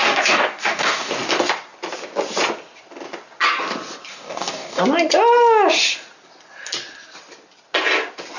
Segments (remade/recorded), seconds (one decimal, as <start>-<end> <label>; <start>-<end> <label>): 0.0-1.1 remade; 1.1-4.1 recorded; 4.1-4.8 remade; 4.8-8.4 recorded

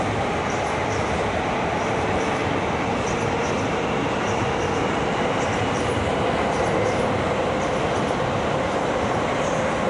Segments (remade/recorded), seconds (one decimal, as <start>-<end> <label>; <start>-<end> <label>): 0.0-9.9 recorded

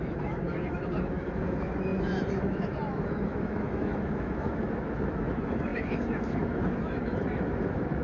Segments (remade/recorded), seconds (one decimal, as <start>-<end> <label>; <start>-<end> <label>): 0.0-8.0 remade

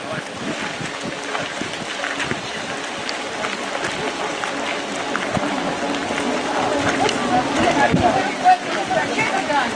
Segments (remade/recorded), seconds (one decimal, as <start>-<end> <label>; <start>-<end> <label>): 0.0-9.8 recorded